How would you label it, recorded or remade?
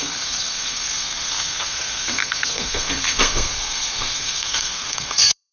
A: remade